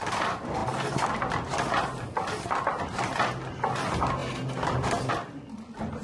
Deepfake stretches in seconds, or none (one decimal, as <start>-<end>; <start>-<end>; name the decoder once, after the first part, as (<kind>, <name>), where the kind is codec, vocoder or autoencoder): none

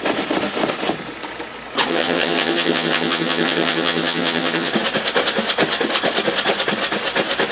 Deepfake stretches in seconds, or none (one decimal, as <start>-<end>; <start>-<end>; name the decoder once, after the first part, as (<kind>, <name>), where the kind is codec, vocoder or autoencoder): 1.9-4.7 (vocoder, HiFi-GAN)

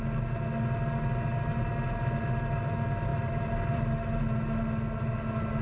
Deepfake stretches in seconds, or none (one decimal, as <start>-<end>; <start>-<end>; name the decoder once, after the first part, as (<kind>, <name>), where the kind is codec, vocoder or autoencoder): 3.1-4.2 (vocoder, BigVGAN v2)

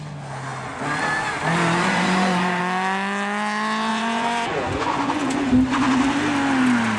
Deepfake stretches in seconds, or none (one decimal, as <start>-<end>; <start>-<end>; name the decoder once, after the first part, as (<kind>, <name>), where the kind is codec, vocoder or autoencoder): 1.8-2.6 (vocoder, Vocos); 3.9-5.5